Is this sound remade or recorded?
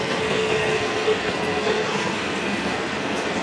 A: remade